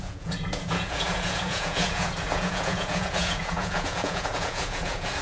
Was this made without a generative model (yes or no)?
no